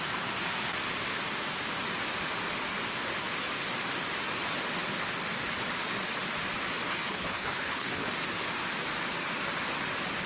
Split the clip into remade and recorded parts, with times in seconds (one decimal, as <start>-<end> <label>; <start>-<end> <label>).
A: 0.0-6.9 recorded; 6.9-8.1 remade; 8.1-10.3 recorded

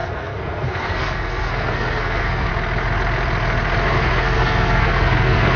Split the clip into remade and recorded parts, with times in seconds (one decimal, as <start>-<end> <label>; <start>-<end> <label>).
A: 0.0-2.5 remade; 2.5-3.9 recorded; 3.9-5.6 remade

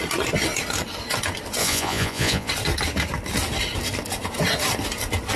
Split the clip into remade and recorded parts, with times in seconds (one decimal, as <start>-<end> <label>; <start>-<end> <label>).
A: 0.0-1.6 recorded; 1.6-2.5 remade; 2.5-5.4 recorded

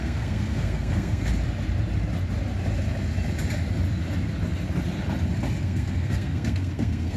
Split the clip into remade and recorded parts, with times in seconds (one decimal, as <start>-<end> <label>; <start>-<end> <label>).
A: 0.0-1.3 remade; 1.3-5.6 recorded; 5.6-7.2 remade